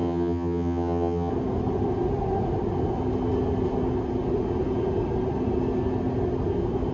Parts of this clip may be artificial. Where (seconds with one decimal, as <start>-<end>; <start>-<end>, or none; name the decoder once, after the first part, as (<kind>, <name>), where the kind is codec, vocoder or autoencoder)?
0.0-1.3 (vocoder, HiFi-GAN)